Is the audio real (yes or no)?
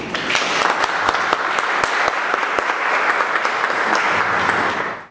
yes